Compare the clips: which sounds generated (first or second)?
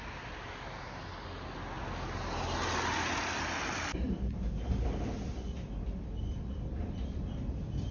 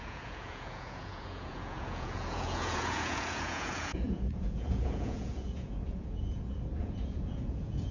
second